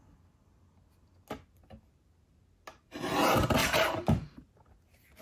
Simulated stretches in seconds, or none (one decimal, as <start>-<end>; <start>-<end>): 3.6-4.5